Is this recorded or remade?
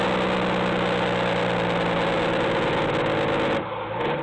recorded